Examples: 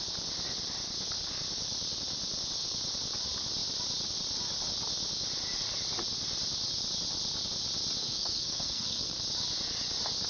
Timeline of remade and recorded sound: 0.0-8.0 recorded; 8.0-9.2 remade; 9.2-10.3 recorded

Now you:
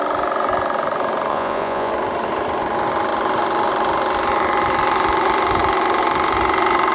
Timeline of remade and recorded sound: 0.0-1.3 recorded; 1.3-1.9 remade; 1.9-6.9 recorded

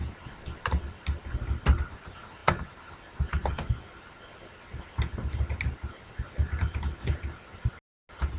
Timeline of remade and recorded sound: 0.0-8.4 recorded

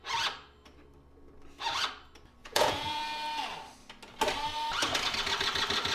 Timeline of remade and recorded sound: 0.0-2.4 recorded; 2.4-3.0 remade; 3.0-5.9 recorded